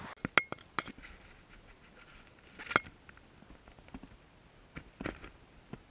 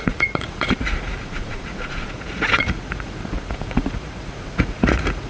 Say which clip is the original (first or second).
first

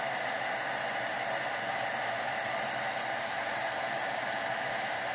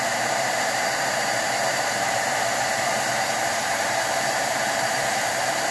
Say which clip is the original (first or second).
first